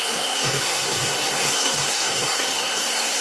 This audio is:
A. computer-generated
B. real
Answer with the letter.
A